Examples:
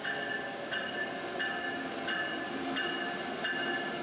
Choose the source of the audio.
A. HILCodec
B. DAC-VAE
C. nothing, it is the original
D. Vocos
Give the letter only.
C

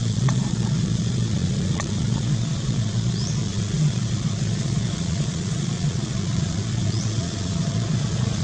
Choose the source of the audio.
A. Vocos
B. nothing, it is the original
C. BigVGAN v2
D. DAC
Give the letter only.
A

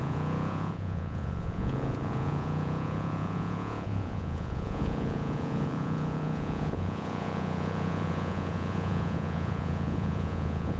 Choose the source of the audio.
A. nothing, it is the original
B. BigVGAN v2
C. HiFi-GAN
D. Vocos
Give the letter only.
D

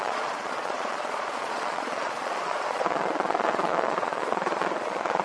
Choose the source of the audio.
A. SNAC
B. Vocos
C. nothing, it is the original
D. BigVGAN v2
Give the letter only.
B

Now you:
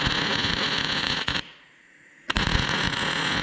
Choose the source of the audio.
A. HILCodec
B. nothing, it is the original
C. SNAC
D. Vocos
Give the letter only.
D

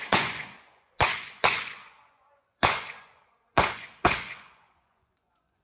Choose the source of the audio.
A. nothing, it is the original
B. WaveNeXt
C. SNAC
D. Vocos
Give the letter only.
D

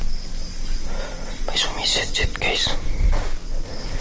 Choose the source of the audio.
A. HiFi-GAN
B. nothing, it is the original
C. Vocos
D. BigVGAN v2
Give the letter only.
B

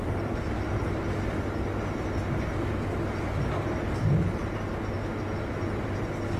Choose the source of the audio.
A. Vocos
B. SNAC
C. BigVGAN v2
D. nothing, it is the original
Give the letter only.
D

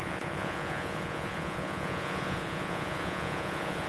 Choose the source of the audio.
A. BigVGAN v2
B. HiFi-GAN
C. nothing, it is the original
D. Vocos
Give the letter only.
D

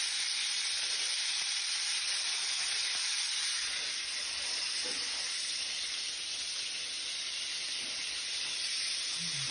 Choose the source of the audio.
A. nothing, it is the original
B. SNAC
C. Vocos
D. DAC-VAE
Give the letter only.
A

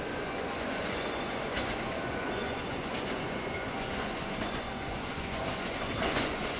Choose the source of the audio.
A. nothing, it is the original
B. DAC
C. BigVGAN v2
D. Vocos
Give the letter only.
D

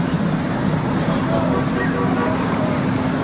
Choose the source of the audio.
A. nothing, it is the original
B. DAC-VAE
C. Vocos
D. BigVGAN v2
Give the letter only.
A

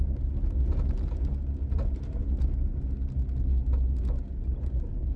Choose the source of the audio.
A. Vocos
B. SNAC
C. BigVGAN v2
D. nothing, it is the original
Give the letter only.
D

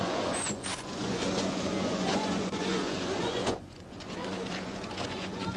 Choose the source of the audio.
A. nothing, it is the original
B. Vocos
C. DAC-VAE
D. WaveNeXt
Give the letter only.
B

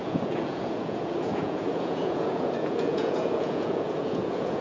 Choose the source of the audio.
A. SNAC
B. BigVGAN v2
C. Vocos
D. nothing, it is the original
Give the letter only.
C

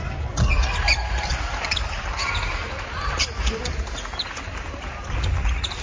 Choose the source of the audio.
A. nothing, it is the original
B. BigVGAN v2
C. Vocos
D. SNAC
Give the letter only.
A